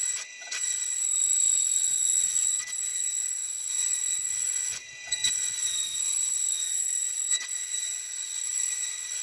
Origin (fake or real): fake